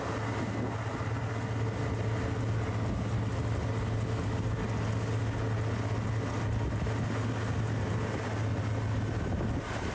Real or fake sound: real